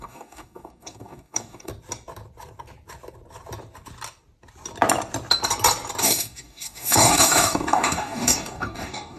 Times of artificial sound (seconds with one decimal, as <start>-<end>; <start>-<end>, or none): 0.0-1.7; 6.0-9.2